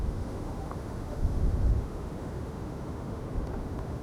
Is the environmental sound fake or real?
fake